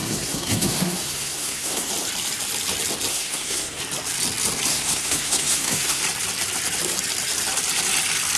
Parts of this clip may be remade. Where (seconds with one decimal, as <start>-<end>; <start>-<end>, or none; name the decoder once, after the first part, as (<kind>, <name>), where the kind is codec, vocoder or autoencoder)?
0.0-1.9 (codec, SNAC); 3.1-3.8; 4.7-6.0